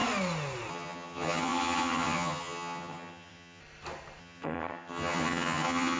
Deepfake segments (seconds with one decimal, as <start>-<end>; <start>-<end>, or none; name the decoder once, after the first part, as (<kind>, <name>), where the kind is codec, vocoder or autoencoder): 0.7-3.6 (vocoder, HiFi-GAN); 4.2-6.0